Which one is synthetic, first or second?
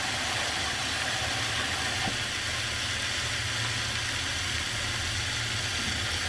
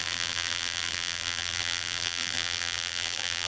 second